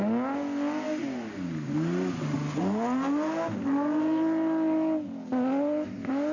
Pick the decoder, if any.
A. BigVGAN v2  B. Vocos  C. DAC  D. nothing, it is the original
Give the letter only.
D